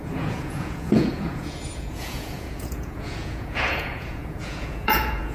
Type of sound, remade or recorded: remade